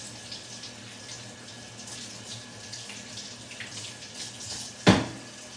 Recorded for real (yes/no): yes